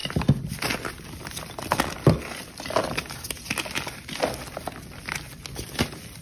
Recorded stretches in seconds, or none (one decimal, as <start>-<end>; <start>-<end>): 0.0-6.2